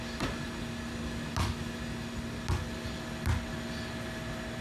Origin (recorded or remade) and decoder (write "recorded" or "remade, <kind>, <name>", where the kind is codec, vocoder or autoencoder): recorded